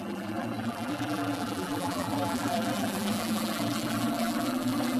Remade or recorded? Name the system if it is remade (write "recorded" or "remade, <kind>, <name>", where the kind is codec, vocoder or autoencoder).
remade, vocoder, BigVGAN v2